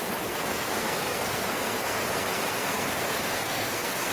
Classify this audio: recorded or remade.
remade